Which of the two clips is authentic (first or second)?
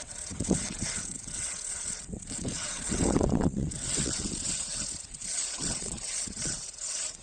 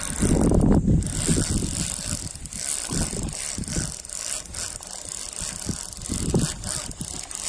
second